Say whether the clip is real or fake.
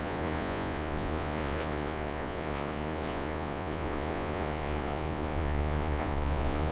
fake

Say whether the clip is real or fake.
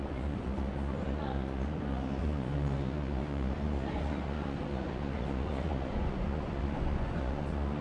fake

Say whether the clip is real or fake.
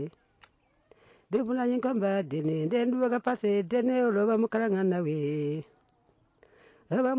real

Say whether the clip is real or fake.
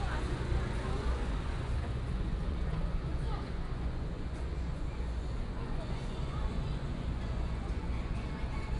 fake